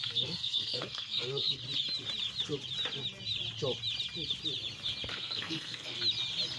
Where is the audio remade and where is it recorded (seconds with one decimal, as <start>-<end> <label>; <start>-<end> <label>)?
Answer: 0.0-1.6 remade; 1.6-5.1 recorded; 5.1-6.0 remade; 6.0-6.6 recorded